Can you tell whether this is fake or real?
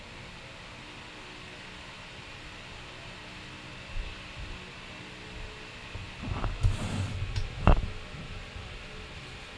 real